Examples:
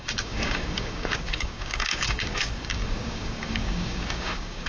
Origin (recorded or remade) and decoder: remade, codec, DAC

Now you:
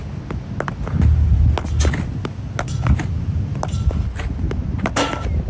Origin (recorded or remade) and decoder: recorded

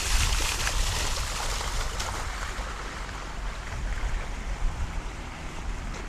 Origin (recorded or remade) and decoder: recorded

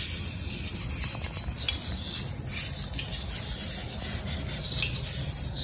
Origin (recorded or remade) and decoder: recorded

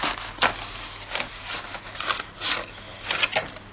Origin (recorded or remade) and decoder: recorded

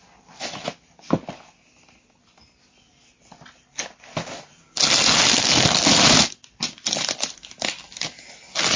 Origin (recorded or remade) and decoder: recorded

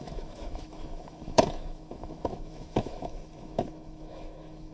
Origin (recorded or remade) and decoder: remade, autoencoder, DAC-VAE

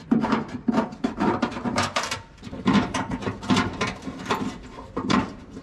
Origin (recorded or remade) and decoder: remade, vocoder, BigVGAN v2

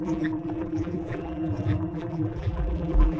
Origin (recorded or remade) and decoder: remade, vocoder, BigVGAN v2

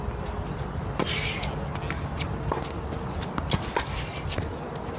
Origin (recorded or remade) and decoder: recorded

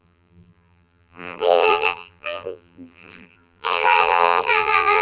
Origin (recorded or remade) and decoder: remade, vocoder, BigVGAN v2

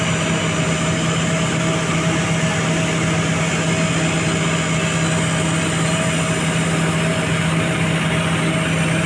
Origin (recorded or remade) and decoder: recorded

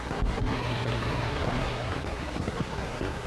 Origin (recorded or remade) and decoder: remade, codec, SNAC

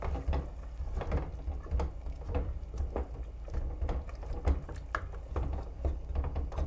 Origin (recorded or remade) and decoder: recorded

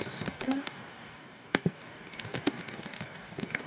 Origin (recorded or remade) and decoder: remade, codec, DAC